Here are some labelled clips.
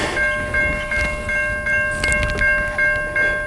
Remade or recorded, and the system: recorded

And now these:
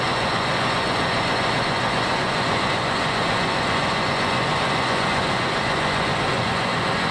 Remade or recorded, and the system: remade, vocoder, Vocos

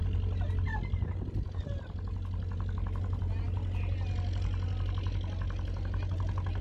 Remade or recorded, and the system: recorded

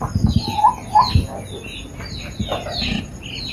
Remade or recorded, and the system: recorded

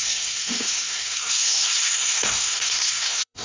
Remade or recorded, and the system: remade, codec, SNAC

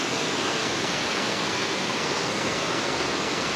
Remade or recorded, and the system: remade, codec, SNAC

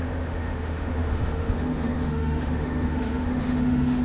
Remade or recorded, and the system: remade, autoencoder, DAC-VAE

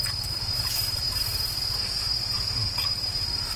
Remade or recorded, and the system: recorded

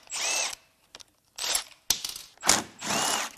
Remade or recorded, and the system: recorded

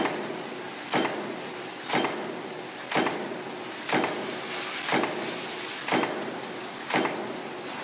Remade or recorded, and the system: recorded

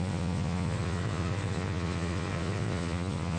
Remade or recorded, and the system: remade, vocoder, Vocos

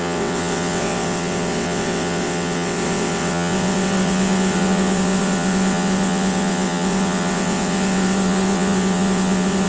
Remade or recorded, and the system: remade, vocoder, WaveNeXt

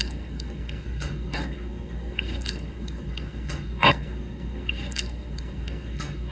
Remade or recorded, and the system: remade, codec, SNAC